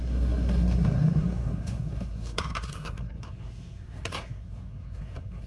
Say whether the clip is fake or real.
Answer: fake